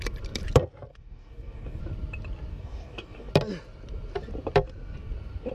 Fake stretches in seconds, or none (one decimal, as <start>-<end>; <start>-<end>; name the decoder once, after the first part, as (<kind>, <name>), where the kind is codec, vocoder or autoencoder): 0.9-1.8 (codec, DAC); 2.5-3.3